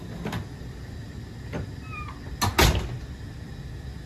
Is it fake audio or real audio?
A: real